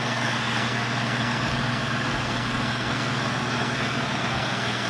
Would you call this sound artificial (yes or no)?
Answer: yes